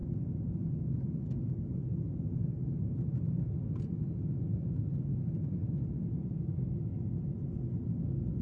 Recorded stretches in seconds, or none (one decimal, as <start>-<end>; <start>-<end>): 0.0-8.4